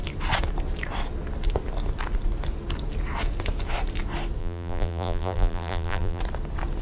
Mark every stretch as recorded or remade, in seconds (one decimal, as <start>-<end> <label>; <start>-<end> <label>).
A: 0.0-4.4 recorded; 4.4-6.2 remade; 6.2-6.8 recorded